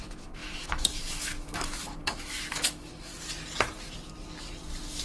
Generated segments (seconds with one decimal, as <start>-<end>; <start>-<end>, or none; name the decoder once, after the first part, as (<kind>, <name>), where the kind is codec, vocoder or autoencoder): 0.0-3.1 (autoencoder, DAC-VAE)